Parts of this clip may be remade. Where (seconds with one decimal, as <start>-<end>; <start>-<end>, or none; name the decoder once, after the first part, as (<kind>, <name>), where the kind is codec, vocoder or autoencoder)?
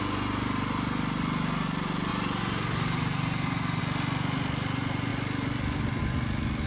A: 2.1-3.8 (vocoder, BigVGAN v2)